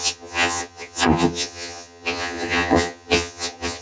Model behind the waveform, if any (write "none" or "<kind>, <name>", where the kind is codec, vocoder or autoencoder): vocoder, HiFi-GAN